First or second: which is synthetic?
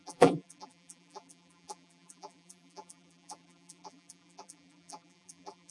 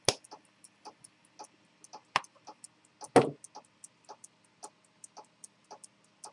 first